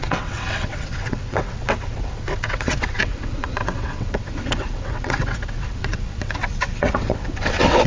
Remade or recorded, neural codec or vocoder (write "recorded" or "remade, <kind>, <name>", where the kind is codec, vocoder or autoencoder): remade, vocoder, WaveNeXt